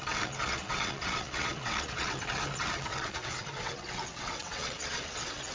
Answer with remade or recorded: remade